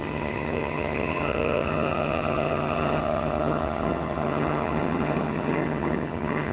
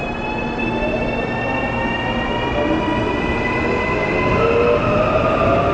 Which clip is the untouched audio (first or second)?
second